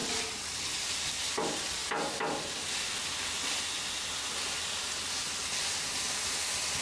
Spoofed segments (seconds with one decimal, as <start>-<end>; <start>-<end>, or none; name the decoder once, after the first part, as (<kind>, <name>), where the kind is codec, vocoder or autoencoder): 0.0-1.8 (vocoder, BigVGAN v2); 5.5-6.8